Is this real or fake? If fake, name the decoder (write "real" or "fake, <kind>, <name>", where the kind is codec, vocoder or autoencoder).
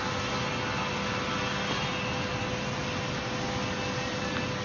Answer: real